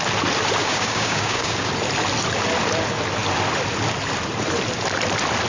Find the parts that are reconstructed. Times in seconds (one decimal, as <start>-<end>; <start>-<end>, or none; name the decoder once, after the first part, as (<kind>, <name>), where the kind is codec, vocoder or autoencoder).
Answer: 0.6-1.7 (codec, DAC)